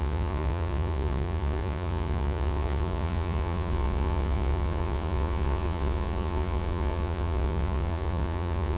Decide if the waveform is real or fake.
fake